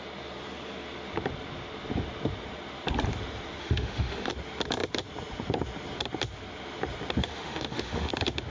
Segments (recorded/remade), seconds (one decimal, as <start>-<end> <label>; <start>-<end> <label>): 0.0-3.6 recorded; 3.6-4.3 remade; 4.3-7.2 recorded; 7.2-8.1 remade; 8.1-8.5 recorded